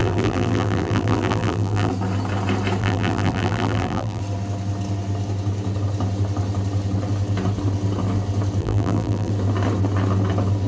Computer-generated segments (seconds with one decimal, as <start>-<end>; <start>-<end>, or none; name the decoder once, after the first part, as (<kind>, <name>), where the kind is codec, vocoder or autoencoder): 0.0-1.9 (vocoder, BigVGAN v2); 2.8-4.2; 8.6-9.3